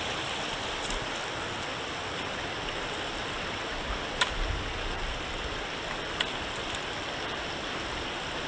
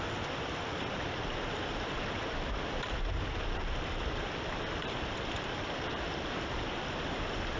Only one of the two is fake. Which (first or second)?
second